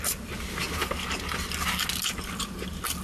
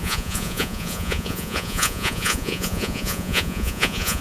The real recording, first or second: first